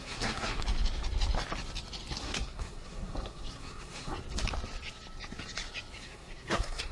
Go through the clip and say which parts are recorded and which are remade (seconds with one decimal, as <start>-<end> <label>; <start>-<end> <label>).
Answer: 0.0-0.6 remade; 0.6-2.2 recorded; 2.2-4.1 remade; 4.1-6.0 recorded; 6.0-6.9 remade